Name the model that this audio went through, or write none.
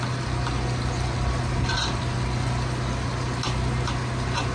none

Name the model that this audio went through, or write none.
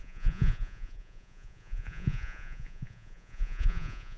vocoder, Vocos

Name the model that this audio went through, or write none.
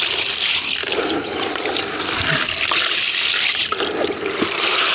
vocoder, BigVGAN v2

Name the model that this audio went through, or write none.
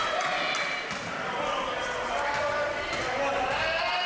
none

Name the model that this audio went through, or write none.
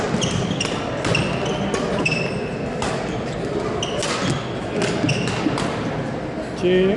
none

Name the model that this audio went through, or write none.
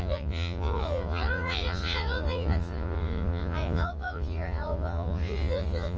vocoder, Vocos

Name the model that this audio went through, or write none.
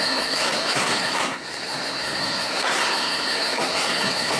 codec, SNAC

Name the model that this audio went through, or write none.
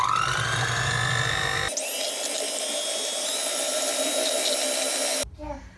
none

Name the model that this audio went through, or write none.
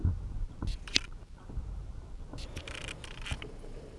none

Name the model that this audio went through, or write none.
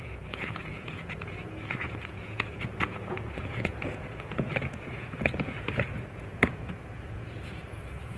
vocoder, Vocos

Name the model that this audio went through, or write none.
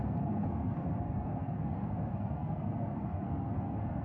codec, SNAC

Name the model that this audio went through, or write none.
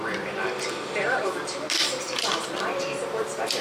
vocoder, BigVGAN v2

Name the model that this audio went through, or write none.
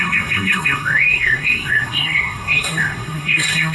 codec, SNAC